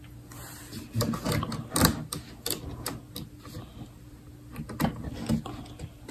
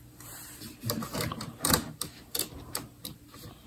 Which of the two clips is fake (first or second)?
second